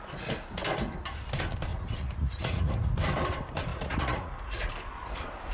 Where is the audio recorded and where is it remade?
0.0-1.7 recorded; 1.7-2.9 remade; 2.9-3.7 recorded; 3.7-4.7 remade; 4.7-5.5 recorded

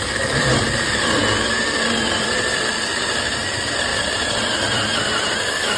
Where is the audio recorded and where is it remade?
0.0-1.2 remade; 1.2-2.9 recorded; 2.9-5.8 remade